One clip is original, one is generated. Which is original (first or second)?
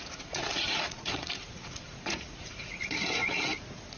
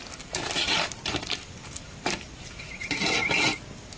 second